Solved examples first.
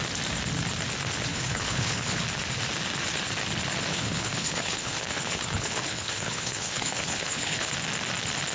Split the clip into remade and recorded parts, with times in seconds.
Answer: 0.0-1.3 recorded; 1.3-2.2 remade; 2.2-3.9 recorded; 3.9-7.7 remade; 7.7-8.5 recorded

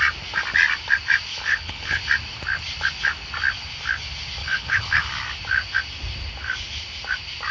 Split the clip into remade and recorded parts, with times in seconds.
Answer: 0.0-1.3 recorded; 1.3-2.0 remade; 2.0-4.4 recorded; 4.4-5.1 remade; 5.1-7.5 recorded

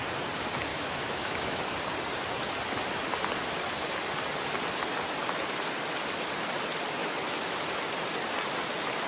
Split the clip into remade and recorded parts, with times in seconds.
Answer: 0.0-0.7 recorded; 0.7-1.6 remade; 1.6-7.0 recorded; 7.0-7.5 remade; 7.5-9.1 recorded

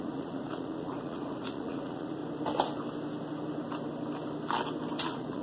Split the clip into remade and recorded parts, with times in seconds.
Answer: 0.0-2.2 remade; 2.2-5.0 recorded; 5.0-5.4 remade

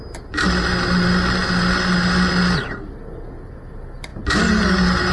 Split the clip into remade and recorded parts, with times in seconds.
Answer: 0.0-5.1 recorded

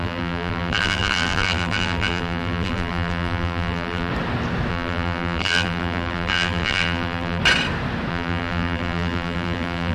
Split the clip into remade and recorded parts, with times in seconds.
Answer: 0.0-4.1 remade; 4.1-4.7 recorded; 4.7-7.4 remade; 7.4-8.1 recorded; 8.1-9.9 remade